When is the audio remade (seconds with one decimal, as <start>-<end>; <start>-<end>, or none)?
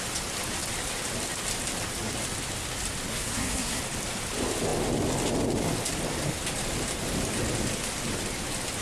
3.1-3.8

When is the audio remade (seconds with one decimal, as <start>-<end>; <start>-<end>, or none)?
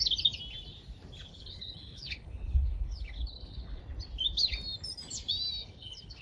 1.3-3.8; 5.6-6.2